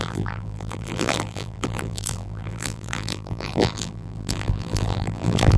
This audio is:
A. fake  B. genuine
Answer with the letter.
A